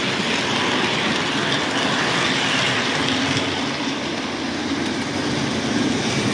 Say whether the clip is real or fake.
real